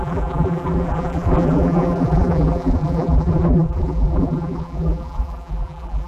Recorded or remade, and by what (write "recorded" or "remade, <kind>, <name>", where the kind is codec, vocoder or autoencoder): remade, vocoder, BigVGAN v2